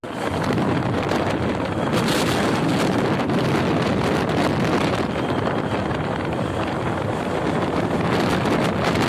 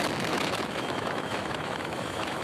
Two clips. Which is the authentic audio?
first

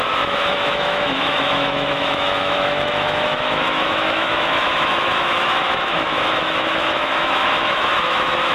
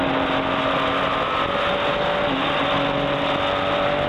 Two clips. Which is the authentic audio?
second